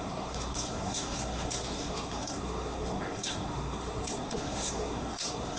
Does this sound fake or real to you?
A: fake